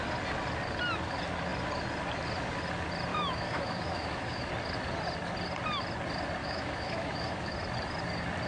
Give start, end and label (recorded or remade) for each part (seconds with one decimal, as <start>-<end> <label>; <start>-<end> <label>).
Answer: 0.0-3.1 recorded; 3.1-4.5 remade; 4.5-6.4 recorded; 6.4-7.5 remade; 7.5-8.5 recorded